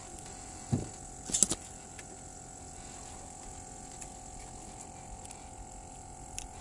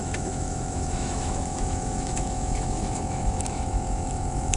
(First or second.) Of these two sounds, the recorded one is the first